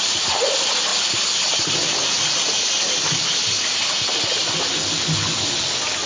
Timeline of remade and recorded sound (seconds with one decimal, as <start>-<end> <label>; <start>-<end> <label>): 0.0-6.1 recorded